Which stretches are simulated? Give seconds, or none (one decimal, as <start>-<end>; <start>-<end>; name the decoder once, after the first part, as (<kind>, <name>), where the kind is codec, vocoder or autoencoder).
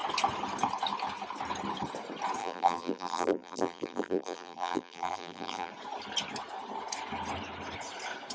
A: 2.4-5.7 (vocoder, BigVGAN v2)